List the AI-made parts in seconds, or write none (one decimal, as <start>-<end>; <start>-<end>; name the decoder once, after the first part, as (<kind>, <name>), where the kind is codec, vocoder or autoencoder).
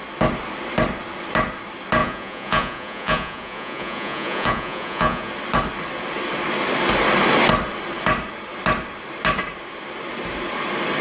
2.0-5.3 (vocoder, Vocos)